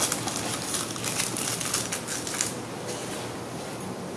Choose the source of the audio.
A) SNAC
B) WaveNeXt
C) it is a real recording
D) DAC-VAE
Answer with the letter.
C